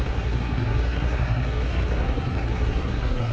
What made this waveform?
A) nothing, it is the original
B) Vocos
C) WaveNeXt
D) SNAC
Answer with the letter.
D